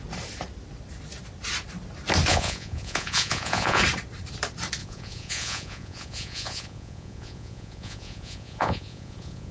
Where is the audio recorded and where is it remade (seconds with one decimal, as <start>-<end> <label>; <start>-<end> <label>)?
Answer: 0.0-2.3 recorded; 2.3-3.8 remade; 3.8-4.8 recorded; 4.8-9.5 remade